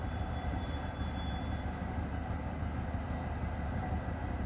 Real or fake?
fake